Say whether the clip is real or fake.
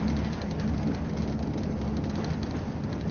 real